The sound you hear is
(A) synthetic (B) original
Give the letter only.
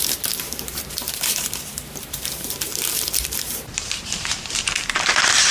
A